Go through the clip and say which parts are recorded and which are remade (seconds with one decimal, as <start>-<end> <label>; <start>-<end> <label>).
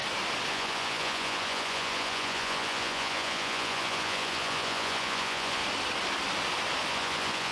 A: 0.0-0.5 recorded; 0.5-5.6 remade; 5.6-6.9 recorded; 6.9-7.5 remade